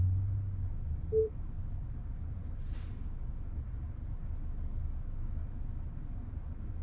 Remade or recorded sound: recorded